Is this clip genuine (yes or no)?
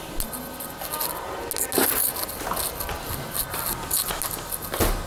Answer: yes